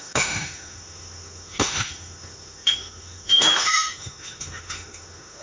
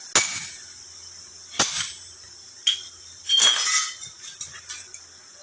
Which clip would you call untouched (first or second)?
second